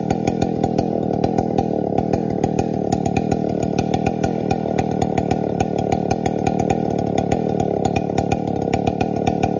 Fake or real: real